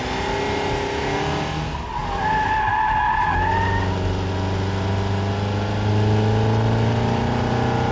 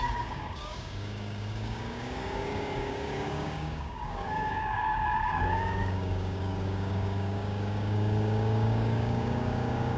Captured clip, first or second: first